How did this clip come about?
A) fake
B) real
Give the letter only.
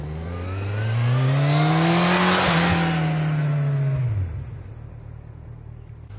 B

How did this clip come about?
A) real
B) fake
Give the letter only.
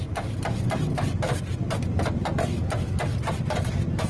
A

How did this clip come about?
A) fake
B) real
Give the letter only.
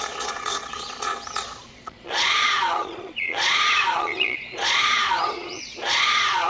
A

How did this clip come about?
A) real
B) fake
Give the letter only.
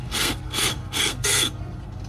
B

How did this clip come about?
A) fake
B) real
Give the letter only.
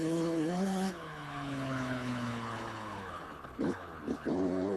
A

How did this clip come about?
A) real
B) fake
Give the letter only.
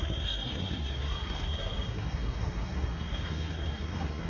B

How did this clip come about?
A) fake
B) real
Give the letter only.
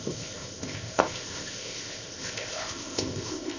A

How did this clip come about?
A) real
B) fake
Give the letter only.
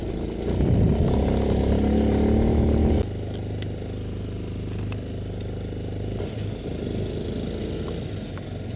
A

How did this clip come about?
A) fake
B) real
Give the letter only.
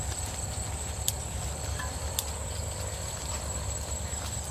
B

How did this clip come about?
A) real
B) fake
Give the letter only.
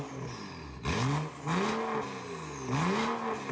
A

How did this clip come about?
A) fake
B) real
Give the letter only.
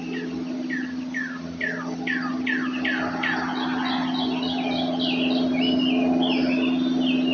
B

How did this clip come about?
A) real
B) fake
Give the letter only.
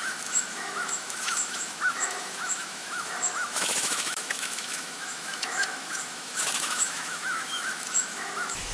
B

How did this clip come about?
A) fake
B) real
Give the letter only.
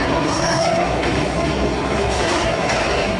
A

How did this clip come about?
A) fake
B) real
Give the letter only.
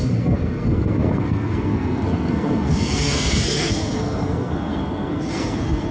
A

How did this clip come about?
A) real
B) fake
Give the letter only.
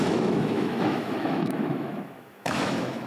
B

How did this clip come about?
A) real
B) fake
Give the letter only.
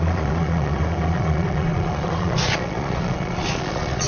B